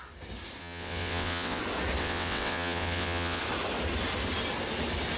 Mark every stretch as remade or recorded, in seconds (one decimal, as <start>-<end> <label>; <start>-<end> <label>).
0.0-0.6 recorded; 0.6-1.6 remade; 1.6-2.0 recorded; 2.0-3.4 remade; 3.4-5.2 recorded

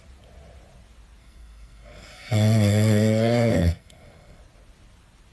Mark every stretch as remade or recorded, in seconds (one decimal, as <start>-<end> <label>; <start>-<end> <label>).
0.0-1.2 recorded; 1.2-4.4 remade; 4.4-5.3 recorded

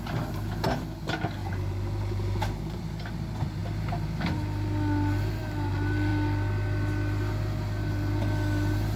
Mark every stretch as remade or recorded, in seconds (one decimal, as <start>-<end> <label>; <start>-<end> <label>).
0.0-1.4 recorded; 1.4-2.8 remade; 2.8-9.0 recorded

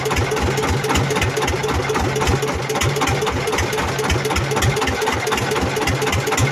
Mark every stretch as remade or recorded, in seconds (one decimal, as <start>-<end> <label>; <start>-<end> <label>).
0.0-6.5 recorded

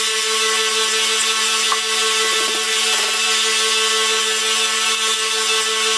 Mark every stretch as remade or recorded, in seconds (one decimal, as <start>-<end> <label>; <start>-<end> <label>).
0.0-6.0 recorded